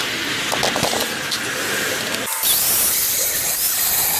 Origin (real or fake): real